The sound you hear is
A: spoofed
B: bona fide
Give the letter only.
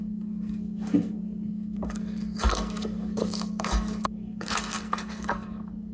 A